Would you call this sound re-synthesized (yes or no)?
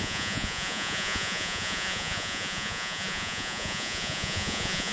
yes